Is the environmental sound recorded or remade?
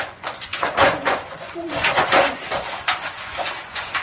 remade